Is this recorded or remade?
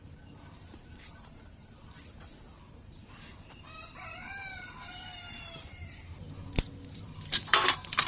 remade